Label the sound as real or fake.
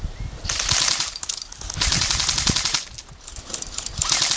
real